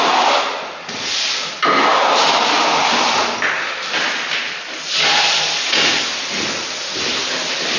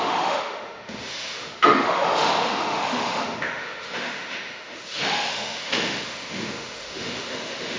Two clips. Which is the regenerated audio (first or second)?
second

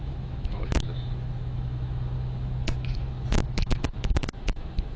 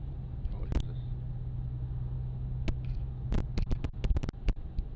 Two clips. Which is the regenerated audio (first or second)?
first